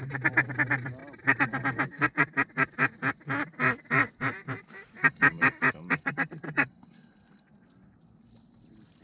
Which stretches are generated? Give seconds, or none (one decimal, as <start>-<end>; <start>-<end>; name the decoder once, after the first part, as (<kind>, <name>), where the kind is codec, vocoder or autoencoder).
0.0-1.0 (vocoder, BigVGAN v2); 4.6-9.0